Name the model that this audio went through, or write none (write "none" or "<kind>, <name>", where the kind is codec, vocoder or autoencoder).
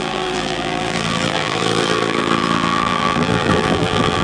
vocoder, BigVGAN v2